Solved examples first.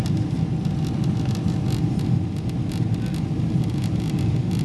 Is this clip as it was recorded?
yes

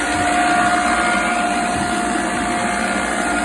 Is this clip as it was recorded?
yes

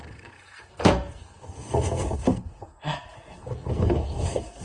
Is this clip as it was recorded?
no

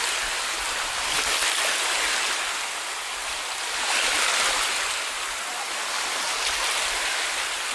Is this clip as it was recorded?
yes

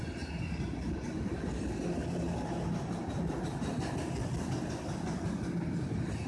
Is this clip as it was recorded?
yes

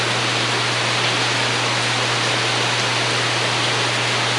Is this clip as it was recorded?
yes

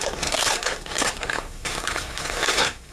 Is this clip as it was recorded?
no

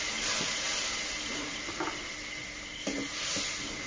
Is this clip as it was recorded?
yes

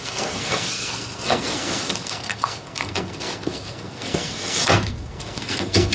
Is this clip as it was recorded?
no